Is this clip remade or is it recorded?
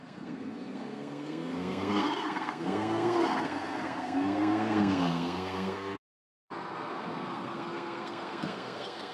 remade